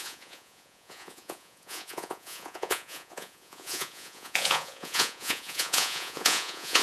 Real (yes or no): no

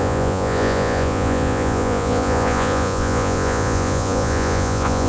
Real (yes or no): no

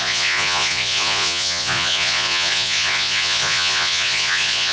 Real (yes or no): no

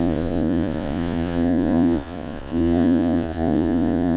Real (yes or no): no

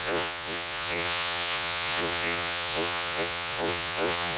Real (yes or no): no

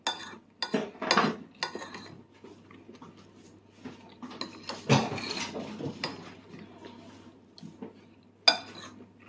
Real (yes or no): yes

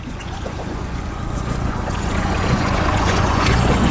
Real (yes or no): no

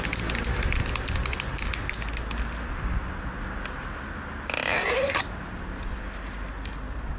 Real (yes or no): yes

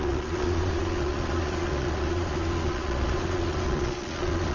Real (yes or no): no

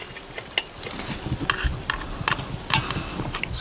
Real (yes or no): yes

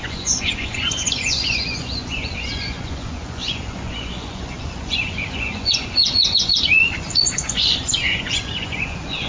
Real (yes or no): no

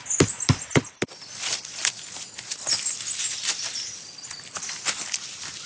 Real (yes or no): yes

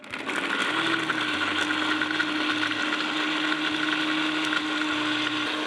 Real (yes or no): yes